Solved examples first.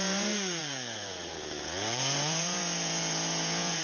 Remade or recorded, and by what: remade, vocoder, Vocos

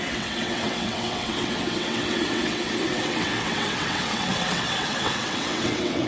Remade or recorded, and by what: remade, vocoder, WaveNeXt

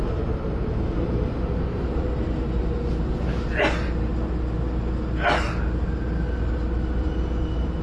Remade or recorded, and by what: recorded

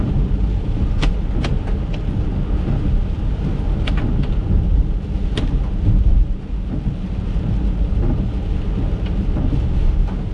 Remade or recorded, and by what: recorded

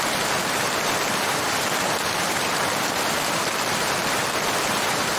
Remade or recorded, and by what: remade, vocoder, BigVGAN v2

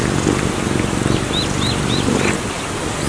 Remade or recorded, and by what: recorded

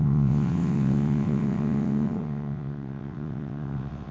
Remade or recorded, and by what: remade, vocoder, WaveNeXt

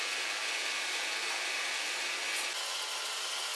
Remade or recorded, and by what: recorded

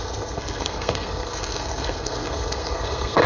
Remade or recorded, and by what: remade, codec, SNAC